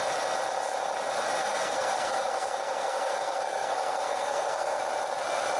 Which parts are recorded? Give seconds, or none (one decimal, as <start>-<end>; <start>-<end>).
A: 0.0-1.4; 4.8-5.6